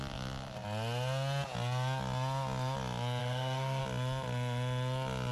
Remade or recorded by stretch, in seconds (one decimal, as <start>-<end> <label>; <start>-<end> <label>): 0.0-3.2 recorded; 3.2-3.8 remade; 3.8-5.3 recorded